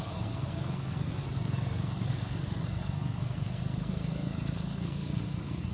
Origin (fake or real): fake